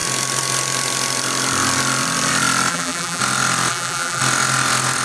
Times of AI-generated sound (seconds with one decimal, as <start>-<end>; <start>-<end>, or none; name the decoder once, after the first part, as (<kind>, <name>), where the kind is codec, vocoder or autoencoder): 2.7-3.2 (vocoder, BigVGAN v2); 3.7-4.2